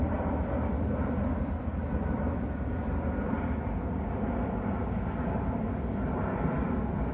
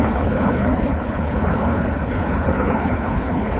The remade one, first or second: second